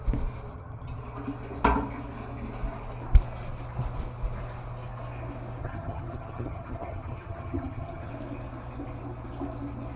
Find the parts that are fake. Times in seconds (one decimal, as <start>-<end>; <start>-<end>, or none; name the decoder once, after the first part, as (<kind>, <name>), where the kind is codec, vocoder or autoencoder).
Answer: 0.5-1.0 (vocoder, HiFi-GAN); 5.6-8.1